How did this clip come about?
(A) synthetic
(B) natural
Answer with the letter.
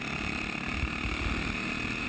B